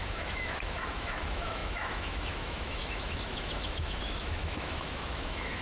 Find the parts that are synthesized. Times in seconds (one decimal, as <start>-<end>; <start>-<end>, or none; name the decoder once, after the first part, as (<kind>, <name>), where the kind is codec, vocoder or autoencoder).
0.0-5.6 (autoencoder, DAC-VAE)